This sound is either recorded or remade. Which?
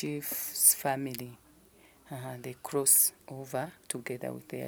recorded